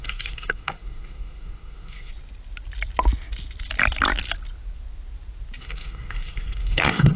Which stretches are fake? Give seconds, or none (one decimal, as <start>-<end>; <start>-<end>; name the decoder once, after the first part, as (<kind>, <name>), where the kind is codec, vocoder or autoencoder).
0.0-2.1 (codec, SNAC); 5.6-7.2